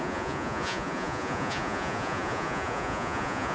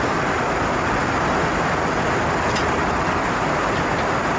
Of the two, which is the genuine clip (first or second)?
second